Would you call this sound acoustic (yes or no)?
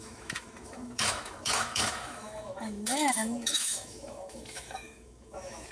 no